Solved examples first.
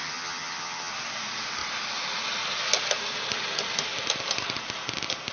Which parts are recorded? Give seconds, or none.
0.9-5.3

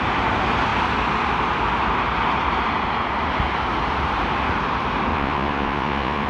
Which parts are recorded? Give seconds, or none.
0.0-5.1

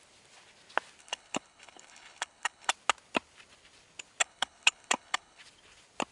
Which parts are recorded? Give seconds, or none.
0.0-1.0; 2.7-4.2; 5.4-6.1

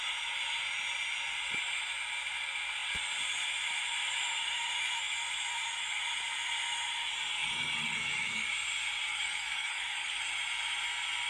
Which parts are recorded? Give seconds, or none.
0.0-7.3; 8.5-9.1; 10.2-11.3

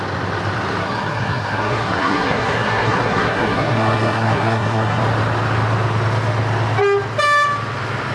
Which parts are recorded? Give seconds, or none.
0.0-0.8; 5.0-8.1

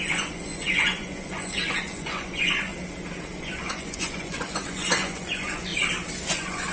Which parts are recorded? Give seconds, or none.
2.7-3.4; 5.7-6.3

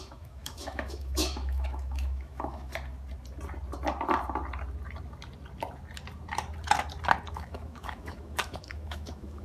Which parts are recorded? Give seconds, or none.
2.7-7.3